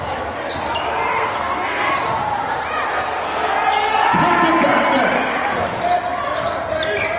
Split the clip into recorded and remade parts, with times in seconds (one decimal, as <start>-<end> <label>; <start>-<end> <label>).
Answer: 0.0-1.1 recorded; 1.1-1.9 remade; 1.9-2.9 recorded; 2.9-3.5 remade; 3.5-7.2 recorded